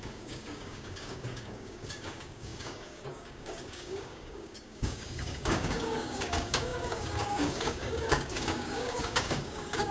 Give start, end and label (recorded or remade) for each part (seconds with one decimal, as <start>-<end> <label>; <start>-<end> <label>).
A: 0.0-9.9 remade

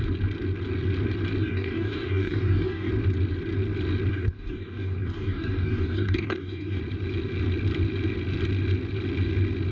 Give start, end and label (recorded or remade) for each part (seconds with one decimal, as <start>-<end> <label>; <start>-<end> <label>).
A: 0.0-1.4 recorded; 1.4-2.9 remade; 2.9-4.1 recorded; 4.1-6.8 remade; 6.8-9.7 recorded

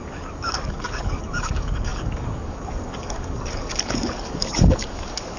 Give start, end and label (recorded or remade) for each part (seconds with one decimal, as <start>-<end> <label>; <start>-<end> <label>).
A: 0.0-5.4 remade

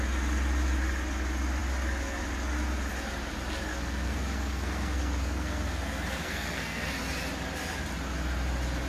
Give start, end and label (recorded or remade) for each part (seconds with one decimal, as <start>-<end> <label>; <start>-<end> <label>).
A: 0.0-3.7 recorded; 3.7-6.9 remade; 6.9-8.9 recorded